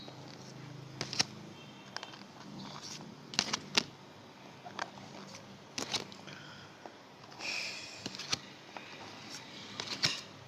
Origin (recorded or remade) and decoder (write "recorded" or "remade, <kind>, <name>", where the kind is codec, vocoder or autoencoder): recorded